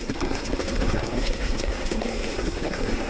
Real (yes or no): no